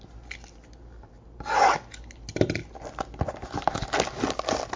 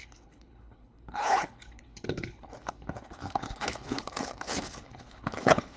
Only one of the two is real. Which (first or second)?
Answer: first